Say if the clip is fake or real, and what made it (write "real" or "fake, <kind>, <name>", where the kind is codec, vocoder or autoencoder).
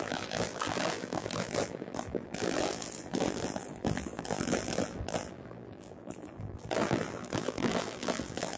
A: fake, vocoder, BigVGAN v2